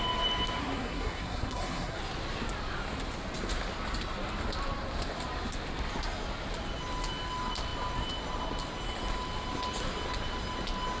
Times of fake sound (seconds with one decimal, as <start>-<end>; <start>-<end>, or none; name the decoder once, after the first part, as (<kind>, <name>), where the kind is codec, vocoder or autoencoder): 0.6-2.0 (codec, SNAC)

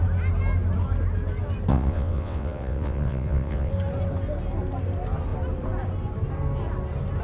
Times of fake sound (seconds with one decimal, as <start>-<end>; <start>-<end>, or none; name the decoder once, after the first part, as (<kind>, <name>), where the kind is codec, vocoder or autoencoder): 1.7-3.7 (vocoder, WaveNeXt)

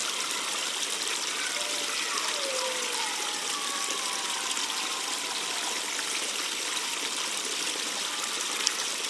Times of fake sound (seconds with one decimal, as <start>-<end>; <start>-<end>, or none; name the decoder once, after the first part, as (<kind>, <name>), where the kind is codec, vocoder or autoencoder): none

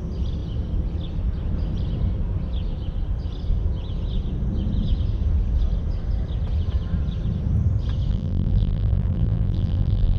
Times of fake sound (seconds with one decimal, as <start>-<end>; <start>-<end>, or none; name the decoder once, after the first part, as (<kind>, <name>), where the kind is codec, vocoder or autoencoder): 8.1-10.2 (vocoder, BigVGAN v2)

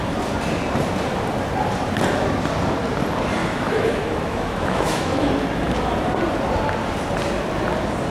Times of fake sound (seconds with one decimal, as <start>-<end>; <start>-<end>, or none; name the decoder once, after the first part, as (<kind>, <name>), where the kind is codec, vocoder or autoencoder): 3.4-5.3 (autoencoder, DAC-VAE)